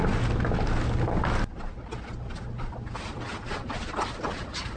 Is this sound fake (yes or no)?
no